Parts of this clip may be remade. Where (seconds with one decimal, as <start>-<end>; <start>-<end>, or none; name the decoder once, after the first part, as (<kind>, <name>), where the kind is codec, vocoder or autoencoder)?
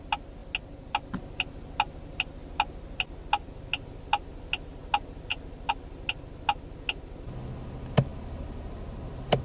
none